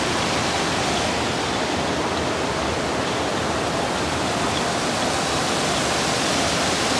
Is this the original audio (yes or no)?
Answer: yes